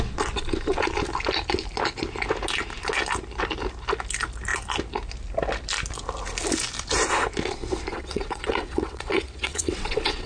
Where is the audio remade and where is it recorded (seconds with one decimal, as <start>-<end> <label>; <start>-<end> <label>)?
0.0-7.9 recorded; 7.9-10.3 remade